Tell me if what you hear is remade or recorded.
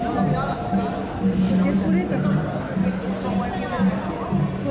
recorded